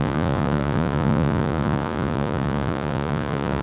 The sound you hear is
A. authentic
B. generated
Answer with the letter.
B